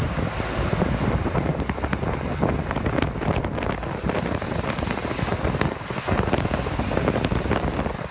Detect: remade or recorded recorded